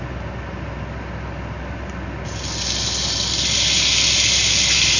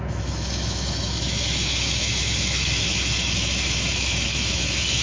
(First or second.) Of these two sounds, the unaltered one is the first